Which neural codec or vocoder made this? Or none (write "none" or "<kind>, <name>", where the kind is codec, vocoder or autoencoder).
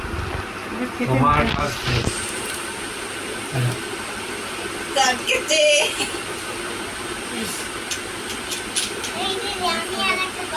none